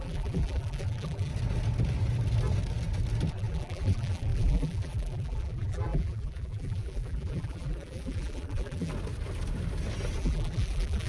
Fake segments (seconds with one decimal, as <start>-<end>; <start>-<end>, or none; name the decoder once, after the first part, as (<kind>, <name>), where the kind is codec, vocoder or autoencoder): 0.0-1.3 (vocoder, BigVGAN v2); 3.3-8.9; 10.2-11.1